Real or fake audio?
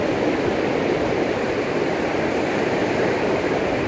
real